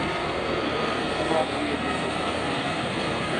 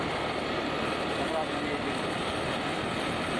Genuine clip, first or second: second